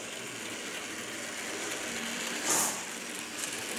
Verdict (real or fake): real